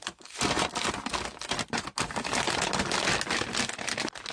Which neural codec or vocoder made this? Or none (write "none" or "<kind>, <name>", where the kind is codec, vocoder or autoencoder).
none